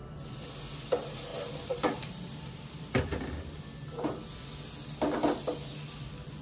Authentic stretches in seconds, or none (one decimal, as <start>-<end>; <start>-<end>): 0.5-1.3; 3.0-6.4